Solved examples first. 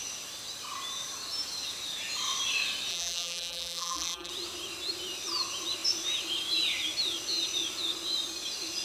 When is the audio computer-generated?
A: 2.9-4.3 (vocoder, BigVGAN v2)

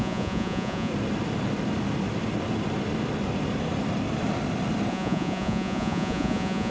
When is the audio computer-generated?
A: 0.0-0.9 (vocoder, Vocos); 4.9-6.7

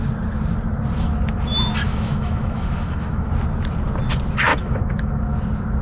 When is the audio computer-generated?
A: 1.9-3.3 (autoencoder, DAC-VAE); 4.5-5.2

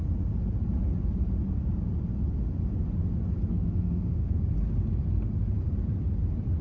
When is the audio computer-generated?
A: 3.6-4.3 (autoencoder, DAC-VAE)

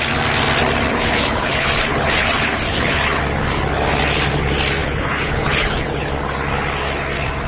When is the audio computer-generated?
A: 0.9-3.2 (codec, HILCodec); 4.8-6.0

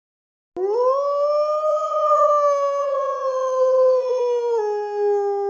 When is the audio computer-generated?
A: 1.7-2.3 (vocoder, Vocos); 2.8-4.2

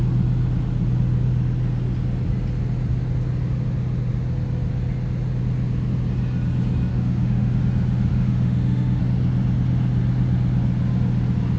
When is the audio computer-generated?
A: 6.9-7.6 (autoencoder, DAC-VAE); 8.1-9.0